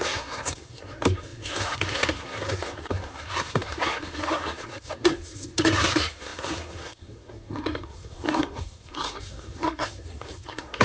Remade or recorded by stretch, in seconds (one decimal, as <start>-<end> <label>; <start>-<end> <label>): 0.0-10.8 remade